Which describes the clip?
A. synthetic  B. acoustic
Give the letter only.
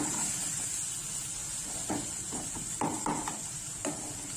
B